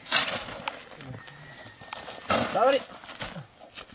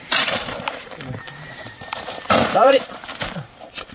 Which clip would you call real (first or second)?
first